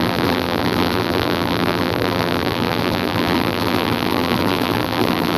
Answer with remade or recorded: remade